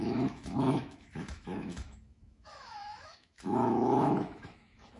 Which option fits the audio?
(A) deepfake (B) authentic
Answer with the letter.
A